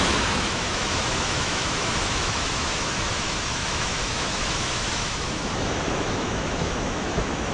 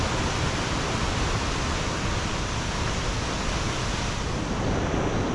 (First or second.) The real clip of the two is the second